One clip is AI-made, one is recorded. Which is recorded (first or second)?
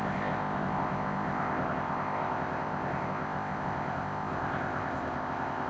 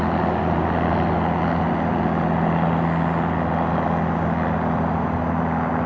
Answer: second